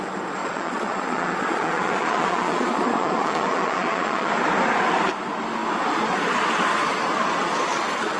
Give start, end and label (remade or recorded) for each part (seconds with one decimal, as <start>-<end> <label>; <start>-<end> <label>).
0.0-0.4 recorded; 0.4-4.3 remade; 4.3-8.2 recorded